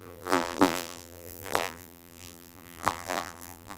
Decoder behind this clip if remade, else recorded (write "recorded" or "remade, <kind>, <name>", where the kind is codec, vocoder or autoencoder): remade, vocoder, BigVGAN v2